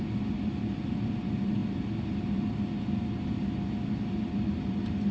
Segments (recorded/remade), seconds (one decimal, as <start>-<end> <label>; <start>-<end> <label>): 0.0-5.1 recorded